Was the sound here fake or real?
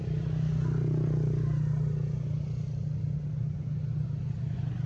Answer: real